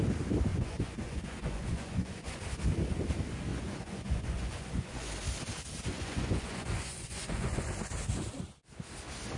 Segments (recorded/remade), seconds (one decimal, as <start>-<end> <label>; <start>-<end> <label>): 0.0-0.5 recorded; 0.5-2.4 remade; 2.4-3.5 recorded; 3.5-5.1 remade; 5.1-5.9 recorded; 5.9-7.7 remade; 7.7-9.4 recorded